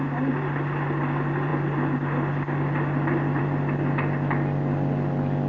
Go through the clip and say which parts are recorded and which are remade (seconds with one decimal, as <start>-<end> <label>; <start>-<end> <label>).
0.0-5.5 recorded